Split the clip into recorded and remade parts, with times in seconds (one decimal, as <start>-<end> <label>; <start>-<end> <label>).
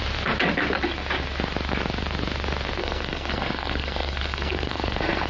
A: 0.0-2.8 recorded; 2.8-5.3 remade